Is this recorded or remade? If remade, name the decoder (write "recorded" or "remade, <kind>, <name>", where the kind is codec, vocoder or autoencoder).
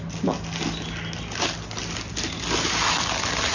recorded